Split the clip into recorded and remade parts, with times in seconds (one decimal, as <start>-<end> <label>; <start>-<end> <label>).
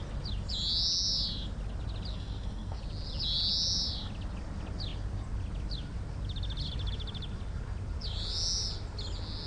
0.0-2.1 recorded; 2.1-2.8 remade; 2.8-9.5 recorded